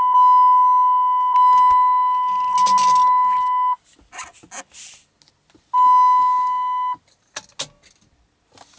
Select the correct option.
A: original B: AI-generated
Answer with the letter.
A